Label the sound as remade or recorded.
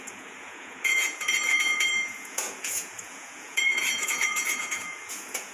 remade